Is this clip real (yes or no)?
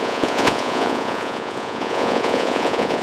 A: no